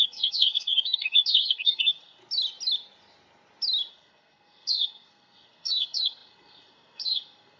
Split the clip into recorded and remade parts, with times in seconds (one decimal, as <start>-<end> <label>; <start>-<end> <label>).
0.0-2.2 remade; 2.2-3.9 recorded; 3.9-7.6 remade